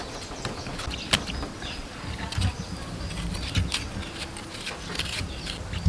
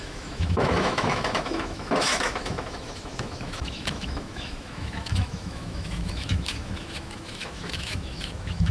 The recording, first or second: first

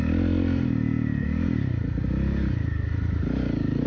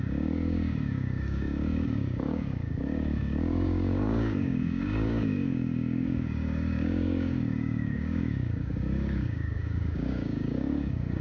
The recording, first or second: first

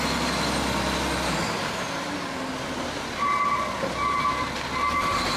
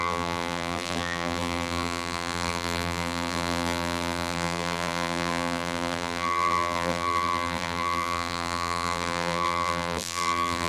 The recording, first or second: first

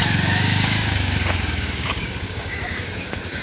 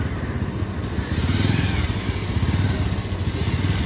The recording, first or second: second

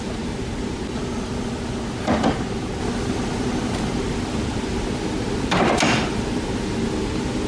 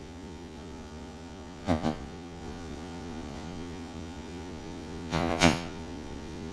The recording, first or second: first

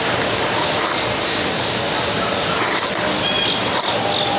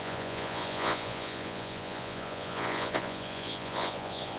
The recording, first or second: first